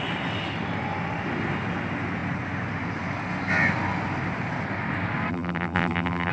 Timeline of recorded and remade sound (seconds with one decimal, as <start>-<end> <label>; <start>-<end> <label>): 0.0-5.3 recorded; 5.3-6.3 remade